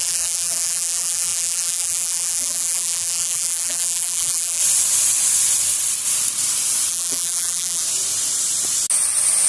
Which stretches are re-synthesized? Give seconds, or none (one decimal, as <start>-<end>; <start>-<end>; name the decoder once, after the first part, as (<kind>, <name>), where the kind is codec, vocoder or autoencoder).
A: 0.0-4.6 (vocoder, BigVGAN v2); 6.9-7.8